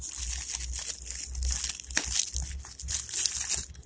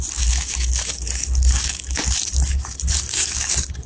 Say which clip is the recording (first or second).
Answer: first